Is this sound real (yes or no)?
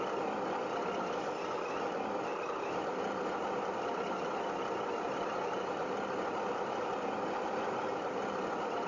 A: yes